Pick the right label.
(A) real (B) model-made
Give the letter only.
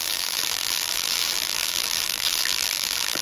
B